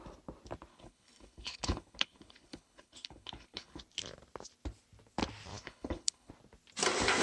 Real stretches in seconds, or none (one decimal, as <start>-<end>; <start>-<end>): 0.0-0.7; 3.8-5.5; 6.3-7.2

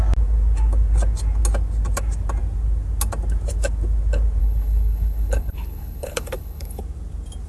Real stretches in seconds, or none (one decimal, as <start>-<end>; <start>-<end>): 0.0-4.4; 6.8-7.5

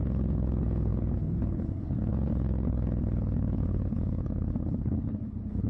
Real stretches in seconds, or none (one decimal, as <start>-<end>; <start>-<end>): none

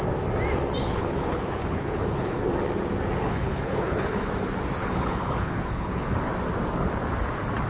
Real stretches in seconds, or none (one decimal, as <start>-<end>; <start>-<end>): 0.0-0.8; 2.4-3.2; 4.3-4.8; 6.2-7.7

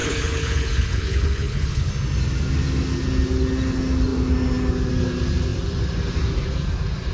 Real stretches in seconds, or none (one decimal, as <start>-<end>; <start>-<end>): 1.9-7.1

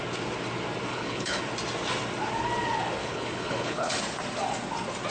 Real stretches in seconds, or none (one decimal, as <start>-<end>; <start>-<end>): 0.0-0.9; 1.4-3.0; 4.0-5.1

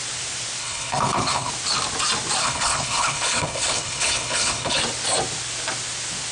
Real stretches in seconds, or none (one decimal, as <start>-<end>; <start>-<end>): 0.0-0.6; 1.5-2.4; 4.8-6.3

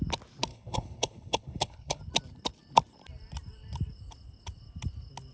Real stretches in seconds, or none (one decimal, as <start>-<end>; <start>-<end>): 0.0-0.5; 2.0-5.3